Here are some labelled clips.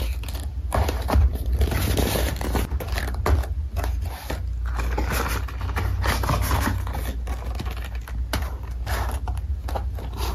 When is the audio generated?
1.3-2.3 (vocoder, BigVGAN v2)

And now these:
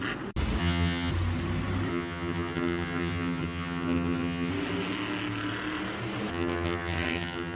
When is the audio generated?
0.6-1.1 (vocoder, HiFi-GAN); 1.9-4.5; 6.3-7.6

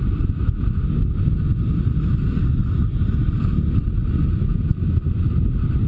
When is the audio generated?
none